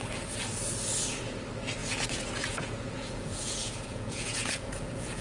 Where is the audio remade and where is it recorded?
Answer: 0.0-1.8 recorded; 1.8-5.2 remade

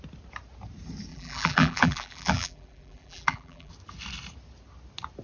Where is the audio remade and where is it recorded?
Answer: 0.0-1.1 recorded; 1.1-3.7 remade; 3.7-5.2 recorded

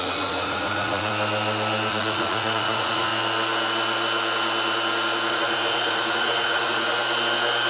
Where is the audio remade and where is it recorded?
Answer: 0.0-1.1 remade; 1.1-1.9 recorded; 1.9-3.1 remade; 3.1-5.3 recorded; 5.3-7.0 remade; 7.0-7.7 recorded